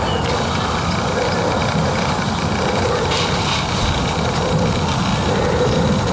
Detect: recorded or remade recorded